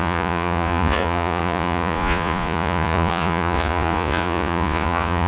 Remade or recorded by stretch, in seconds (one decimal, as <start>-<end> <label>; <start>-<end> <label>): 0.0-5.3 remade